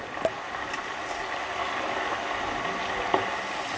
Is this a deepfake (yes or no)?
no